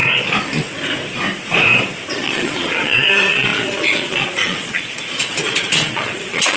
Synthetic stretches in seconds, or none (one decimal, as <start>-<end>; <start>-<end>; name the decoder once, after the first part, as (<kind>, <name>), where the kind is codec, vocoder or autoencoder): 2.1-6.6 (vocoder, Vocos)